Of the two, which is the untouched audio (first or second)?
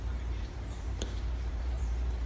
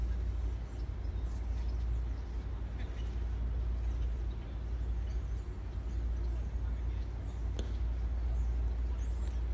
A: second